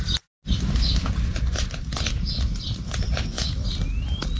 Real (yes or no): yes